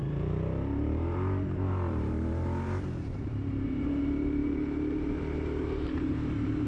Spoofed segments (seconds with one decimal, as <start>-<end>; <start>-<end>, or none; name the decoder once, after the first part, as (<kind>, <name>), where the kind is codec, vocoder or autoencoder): 0.0-6.7 (vocoder, BigVGAN v2)

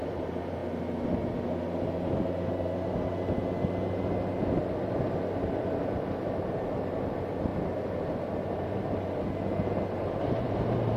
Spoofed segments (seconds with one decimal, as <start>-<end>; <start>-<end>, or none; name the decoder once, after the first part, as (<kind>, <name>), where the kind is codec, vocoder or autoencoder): 0.0-0.6 (vocoder, BigVGAN v2); 5.6-7.5; 9.5-11.0

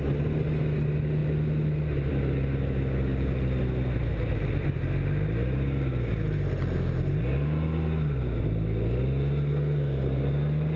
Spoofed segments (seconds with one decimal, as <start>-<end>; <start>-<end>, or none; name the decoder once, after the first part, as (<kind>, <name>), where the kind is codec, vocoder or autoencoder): 3.1-3.6 (vocoder, BigVGAN v2)

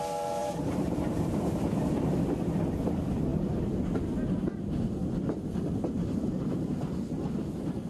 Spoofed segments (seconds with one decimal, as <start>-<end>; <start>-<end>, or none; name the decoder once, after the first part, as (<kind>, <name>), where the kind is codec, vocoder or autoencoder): 0.4-1.8 (vocoder, BigVGAN v2)

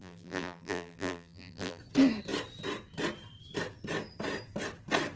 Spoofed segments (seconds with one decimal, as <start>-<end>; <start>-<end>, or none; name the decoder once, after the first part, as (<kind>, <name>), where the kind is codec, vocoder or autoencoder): 0.0-1.8 (vocoder, BigVGAN v2)